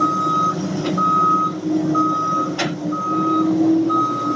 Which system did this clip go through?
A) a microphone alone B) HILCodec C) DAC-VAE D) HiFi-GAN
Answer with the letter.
A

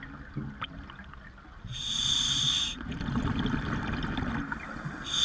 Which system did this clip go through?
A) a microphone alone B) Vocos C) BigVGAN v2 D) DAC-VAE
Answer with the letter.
A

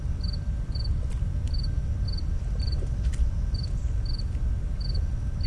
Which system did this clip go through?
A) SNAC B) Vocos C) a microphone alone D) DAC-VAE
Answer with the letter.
C